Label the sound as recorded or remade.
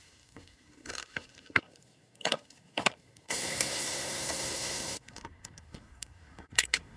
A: remade